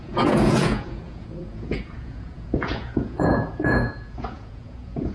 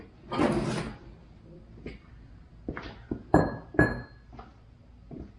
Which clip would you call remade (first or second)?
first